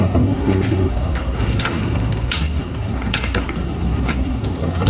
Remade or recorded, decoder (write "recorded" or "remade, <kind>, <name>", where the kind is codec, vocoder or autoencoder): remade, codec, SNAC